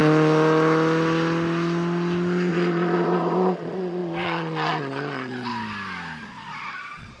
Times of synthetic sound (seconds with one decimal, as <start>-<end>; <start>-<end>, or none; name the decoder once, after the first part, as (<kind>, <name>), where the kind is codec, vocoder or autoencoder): 2.5-5.5 (vocoder, Vocos); 6.2-7.2